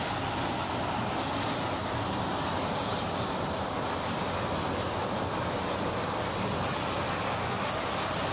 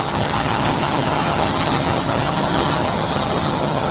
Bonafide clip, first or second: first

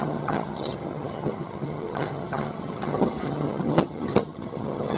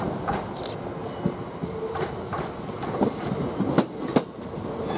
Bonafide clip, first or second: second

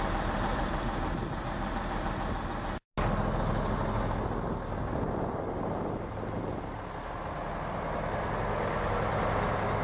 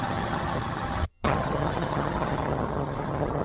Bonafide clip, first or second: first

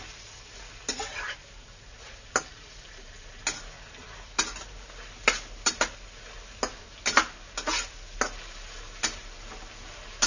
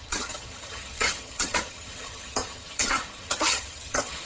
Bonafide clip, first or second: first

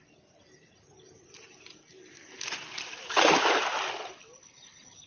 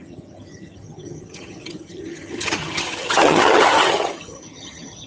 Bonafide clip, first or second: first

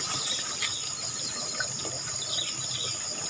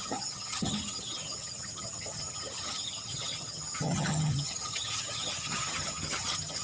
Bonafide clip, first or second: first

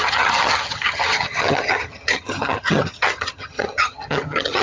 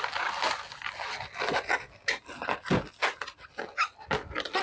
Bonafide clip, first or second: second